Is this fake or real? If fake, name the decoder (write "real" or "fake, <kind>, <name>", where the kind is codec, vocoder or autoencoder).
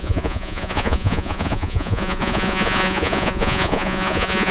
fake, vocoder, Vocos